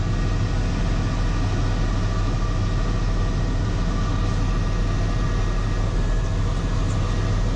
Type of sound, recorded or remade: recorded